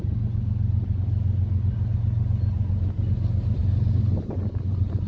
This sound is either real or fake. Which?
real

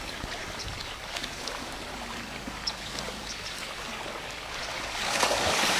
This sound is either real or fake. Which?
fake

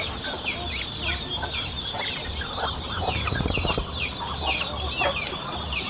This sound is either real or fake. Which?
real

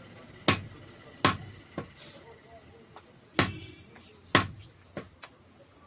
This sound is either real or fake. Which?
real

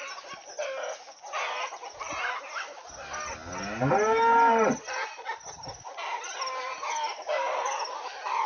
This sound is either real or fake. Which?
real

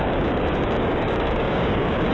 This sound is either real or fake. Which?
fake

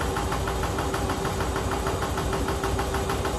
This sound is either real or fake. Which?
real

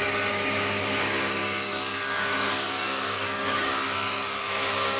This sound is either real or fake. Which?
fake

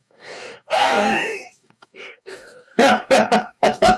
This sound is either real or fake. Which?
fake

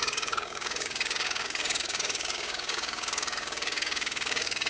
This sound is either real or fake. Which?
fake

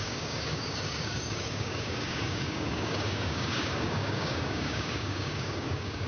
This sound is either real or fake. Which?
fake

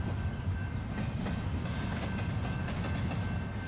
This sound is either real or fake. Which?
real